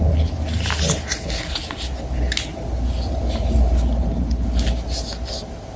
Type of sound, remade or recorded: recorded